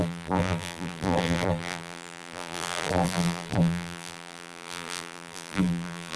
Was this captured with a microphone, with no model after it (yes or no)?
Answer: no